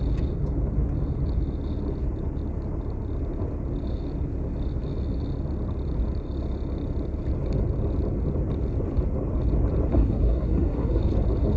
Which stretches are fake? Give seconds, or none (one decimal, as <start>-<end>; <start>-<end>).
9.9-11.0